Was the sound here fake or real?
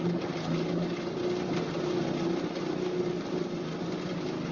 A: real